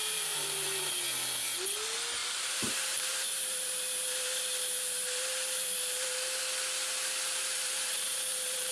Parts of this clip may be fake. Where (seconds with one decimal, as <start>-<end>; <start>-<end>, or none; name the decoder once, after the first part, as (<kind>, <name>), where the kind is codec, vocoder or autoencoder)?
0.0-0.9 (vocoder, BigVGAN v2); 2.2-6.4; 7.4-8.7